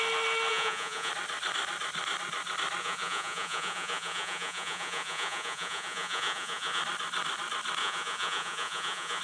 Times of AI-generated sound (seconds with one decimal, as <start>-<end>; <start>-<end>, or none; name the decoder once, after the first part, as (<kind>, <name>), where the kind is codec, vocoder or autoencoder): 0.5-1.1 (vocoder, Vocos); 2.8-6.8; 7.8-9.2